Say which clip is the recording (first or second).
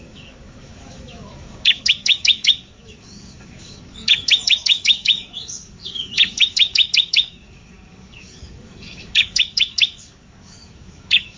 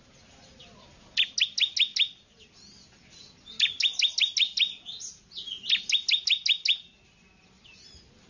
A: second